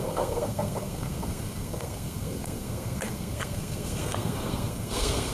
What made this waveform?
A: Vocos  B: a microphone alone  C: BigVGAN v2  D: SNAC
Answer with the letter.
D